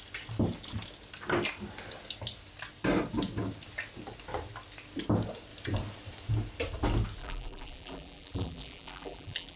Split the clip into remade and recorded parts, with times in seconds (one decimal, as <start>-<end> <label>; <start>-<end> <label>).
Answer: 0.0-7.2 recorded; 7.2-9.6 remade